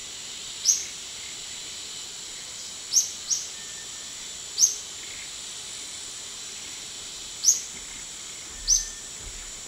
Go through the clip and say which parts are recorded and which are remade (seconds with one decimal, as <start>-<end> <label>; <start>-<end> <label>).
0.0-9.7 recorded